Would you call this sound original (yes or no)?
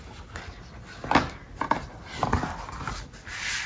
yes